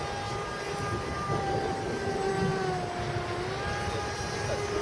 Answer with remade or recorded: recorded